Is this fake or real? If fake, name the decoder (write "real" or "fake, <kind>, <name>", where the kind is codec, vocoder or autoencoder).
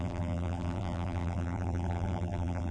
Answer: fake, vocoder, BigVGAN v2